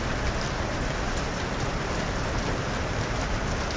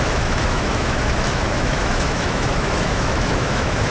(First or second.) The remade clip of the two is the second